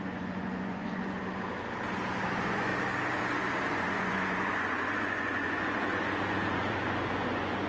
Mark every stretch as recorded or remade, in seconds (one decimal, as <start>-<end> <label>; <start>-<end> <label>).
0.0-1.2 remade; 1.2-2.2 recorded; 2.2-2.7 remade; 2.7-3.7 recorded; 3.7-7.7 remade